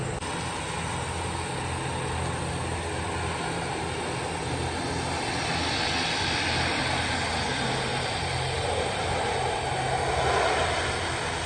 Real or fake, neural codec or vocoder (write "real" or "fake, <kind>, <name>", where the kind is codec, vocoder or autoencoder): real